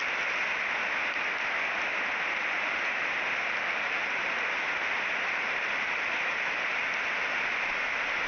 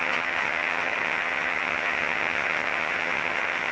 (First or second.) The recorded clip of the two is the first